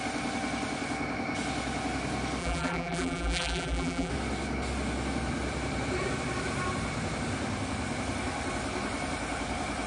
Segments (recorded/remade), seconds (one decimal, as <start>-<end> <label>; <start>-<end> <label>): 0.0-2.4 recorded; 2.4-4.1 remade; 4.1-9.9 recorded